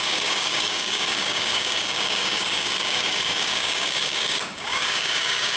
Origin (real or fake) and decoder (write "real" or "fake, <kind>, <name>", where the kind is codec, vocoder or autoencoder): fake, codec, DAC